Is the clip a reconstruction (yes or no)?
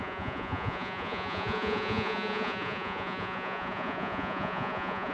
yes